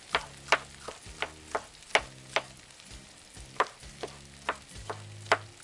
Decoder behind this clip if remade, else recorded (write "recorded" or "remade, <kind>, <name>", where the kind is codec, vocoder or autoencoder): recorded